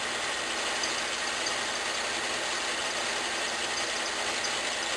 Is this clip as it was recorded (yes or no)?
yes